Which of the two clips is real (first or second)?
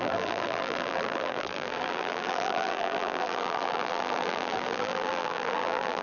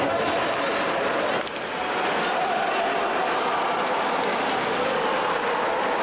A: second